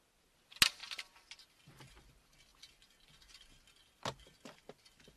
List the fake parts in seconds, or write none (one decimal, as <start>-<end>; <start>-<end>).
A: none